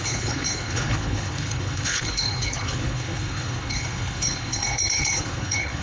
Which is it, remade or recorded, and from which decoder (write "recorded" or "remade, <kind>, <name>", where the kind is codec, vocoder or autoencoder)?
remade, codec, HILCodec